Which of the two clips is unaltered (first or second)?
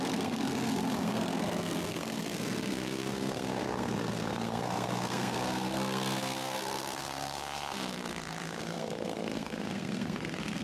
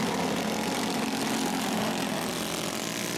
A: second